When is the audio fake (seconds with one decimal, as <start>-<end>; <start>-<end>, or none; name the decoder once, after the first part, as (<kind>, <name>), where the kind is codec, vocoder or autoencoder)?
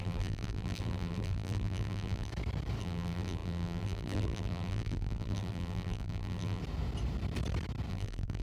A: 0.0-2.3 (vocoder, BigVGAN v2); 2.8-6.6; 7.9-8.4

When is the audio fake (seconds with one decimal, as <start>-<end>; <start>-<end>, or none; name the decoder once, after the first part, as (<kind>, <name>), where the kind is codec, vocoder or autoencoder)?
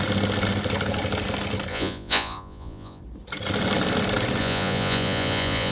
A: 1.7-3.0 (vocoder, Vocos); 4.4-5.7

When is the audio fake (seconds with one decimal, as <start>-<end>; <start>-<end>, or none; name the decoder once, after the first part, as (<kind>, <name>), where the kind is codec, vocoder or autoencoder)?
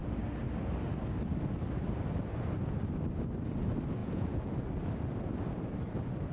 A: 4.0-4.6 (vocoder, Vocos)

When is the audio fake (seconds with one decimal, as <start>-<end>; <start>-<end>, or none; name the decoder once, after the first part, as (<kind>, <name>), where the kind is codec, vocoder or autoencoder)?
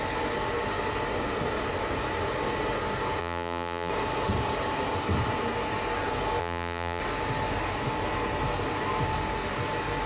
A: 3.2-3.9 (vocoder, BigVGAN v2); 6.4-7.0